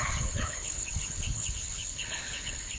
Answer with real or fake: fake